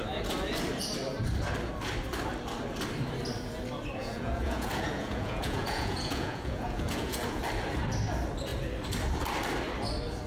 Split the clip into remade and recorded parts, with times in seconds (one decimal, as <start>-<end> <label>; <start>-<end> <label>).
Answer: 0.0-4.0 recorded; 4.0-7.4 remade; 7.4-10.3 recorded